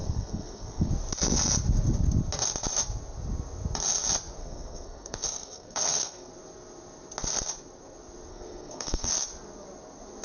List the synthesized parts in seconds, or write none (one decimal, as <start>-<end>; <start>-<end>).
0.0-0.9; 4.4-6.3; 8.3-9.1